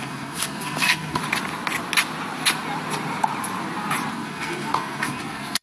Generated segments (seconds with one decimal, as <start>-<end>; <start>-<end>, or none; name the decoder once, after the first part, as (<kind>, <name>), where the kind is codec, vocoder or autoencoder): 0.0-1.2 (codec, SNAC); 4.1-5.6